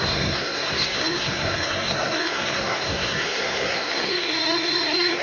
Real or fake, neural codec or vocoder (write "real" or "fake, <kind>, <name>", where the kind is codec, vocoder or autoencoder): fake, codec, SNAC